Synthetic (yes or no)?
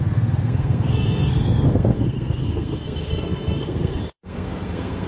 yes